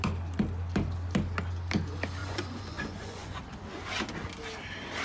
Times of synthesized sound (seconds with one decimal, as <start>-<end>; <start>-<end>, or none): 2.2-3.4